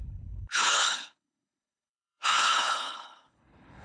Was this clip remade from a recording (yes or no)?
yes